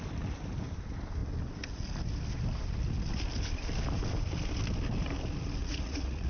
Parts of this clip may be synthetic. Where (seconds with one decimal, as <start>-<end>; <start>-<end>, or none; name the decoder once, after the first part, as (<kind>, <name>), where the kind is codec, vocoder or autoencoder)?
5.6-6.3 (vocoder, Vocos)